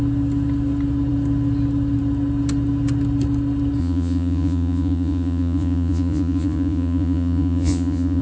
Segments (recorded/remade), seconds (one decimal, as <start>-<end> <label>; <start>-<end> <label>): 0.0-3.8 recorded; 3.8-8.2 remade